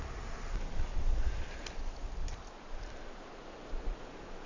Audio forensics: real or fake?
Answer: real